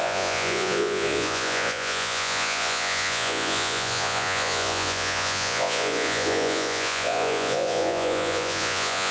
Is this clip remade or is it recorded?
remade